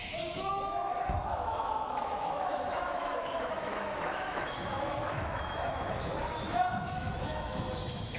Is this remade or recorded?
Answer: remade